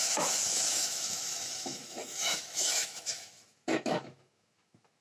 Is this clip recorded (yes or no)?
no